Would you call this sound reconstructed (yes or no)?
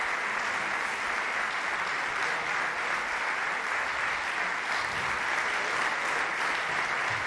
no